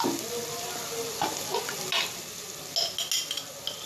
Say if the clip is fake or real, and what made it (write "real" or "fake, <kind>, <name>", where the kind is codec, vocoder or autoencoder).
real